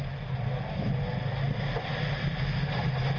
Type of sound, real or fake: real